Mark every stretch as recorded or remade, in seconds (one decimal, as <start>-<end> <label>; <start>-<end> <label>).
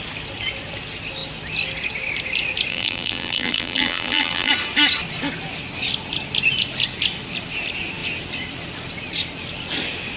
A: 0.0-2.7 recorded; 2.7-4.5 remade; 4.5-10.2 recorded